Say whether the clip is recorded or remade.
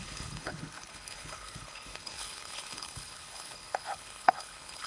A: remade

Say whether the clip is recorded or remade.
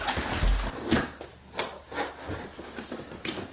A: recorded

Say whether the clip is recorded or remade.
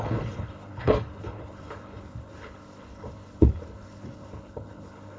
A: remade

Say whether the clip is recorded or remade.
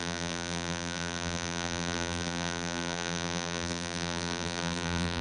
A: remade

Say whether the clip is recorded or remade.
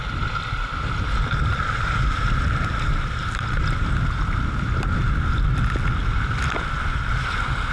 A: recorded